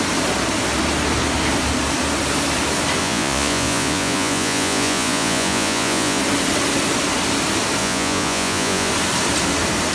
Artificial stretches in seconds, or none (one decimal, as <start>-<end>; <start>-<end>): 3.0-6.2; 7.8-8.9